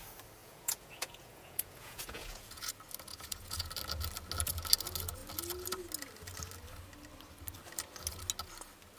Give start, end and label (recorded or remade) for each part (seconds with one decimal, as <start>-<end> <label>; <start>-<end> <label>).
0.0-0.4 recorded; 0.4-2.7 remade; 2.7-3.1 recorded; 3.1-3.7 remade; 3.7-9.0 recorded